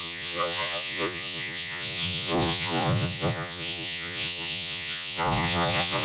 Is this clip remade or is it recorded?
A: remade